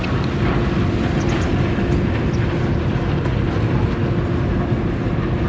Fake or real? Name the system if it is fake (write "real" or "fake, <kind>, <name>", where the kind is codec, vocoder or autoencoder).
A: real